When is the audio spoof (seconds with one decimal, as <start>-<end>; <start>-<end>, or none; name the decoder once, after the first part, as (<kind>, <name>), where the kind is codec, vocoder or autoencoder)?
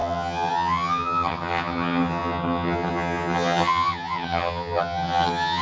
0.0-5.6 (vocoder, HiFi-GAN)